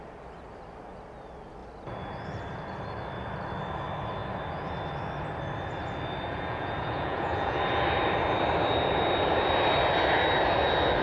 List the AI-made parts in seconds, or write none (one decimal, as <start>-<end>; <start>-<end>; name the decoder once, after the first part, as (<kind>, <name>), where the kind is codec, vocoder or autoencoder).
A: 6.3-7.6 (vocoder, Vocos)